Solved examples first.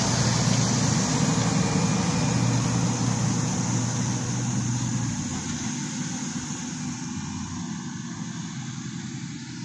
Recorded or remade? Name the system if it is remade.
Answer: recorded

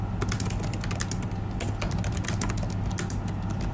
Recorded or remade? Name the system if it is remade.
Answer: recorded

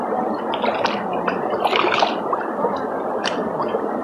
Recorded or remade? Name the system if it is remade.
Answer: recorded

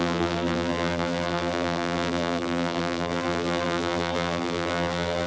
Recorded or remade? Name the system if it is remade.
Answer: remade, vocoder, BigVGAN v2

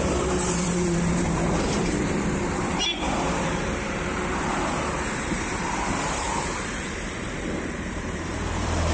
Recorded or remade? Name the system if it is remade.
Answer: remade, vocoder, BigVGAN v2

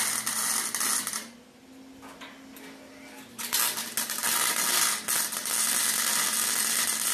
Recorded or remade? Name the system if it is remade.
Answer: recorded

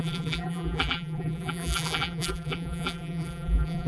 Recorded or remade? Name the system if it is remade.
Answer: remade, vocoder, BigVGAN v2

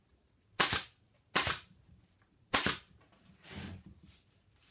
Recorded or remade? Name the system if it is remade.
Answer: remade, vocoder, BigVGAN v2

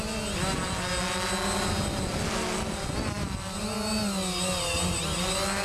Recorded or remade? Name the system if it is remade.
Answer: recorded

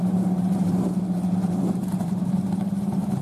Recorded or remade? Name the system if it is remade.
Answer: remade, vocoder, BigVGAN v2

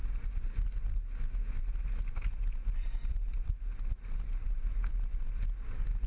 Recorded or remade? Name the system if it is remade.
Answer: recorded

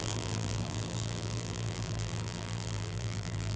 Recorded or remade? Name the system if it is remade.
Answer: remade, vocoder, BigVGAN v2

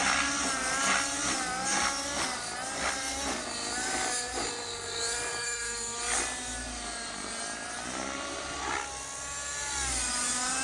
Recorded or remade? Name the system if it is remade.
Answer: recorded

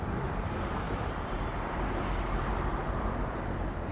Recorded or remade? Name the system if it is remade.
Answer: remade, vocoder, BigVGAN v2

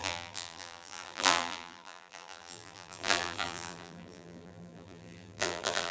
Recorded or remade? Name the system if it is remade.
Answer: remade, vocoder, BigVGAN v2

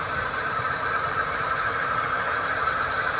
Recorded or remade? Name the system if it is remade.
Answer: remade, vocoder, BigVGAN v2